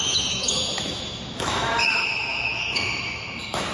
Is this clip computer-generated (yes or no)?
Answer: yes